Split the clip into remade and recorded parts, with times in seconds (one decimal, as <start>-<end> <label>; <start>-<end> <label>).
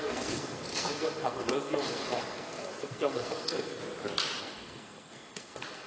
0.0-3.8 remade; 3.8-4.4 recorded; 4.4-5.9 remade